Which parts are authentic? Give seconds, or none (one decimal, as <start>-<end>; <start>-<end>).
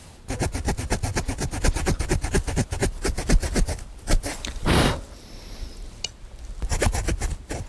0.0-7.7